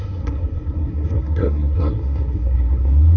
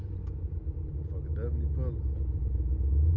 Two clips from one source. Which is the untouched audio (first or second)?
second